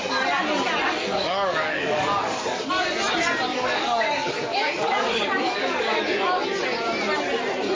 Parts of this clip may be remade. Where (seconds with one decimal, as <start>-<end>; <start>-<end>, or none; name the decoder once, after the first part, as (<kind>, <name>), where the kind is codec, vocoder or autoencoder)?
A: 1.0-2.7 (codec, DAC); 3.5-6.0